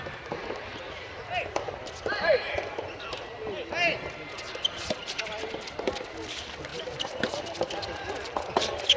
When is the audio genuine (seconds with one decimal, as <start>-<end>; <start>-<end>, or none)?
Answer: 0.0-9.0